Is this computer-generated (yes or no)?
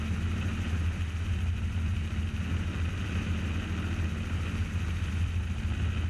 no